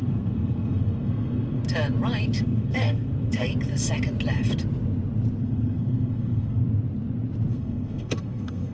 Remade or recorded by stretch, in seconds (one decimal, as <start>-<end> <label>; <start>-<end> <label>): 0.0-1.6 remade; 1.6-2.4 recorded; 2.4-3.5 remade; 3.5-5.4 recorded; 5.4-6.6 remade; 6.6-7.5 recorded; 7.5-8.7 remade